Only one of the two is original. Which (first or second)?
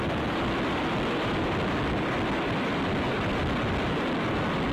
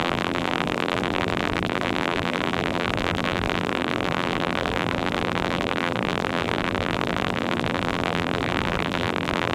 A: first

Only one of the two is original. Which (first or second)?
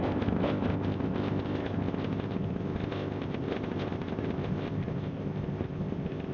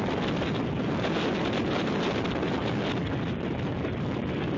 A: second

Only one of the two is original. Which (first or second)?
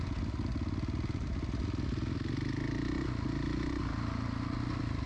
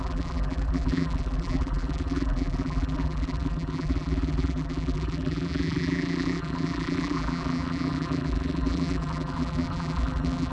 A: first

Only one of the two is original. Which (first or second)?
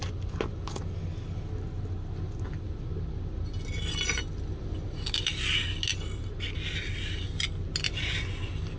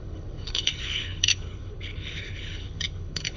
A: first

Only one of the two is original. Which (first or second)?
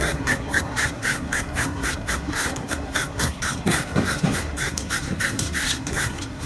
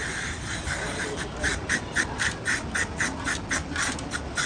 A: second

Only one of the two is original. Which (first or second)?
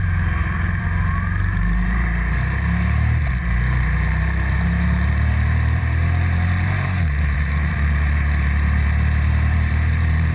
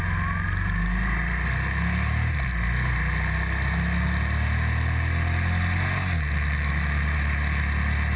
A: second